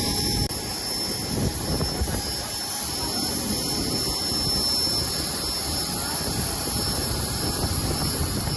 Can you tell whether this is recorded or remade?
recorded